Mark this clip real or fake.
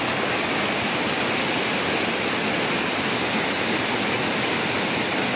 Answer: real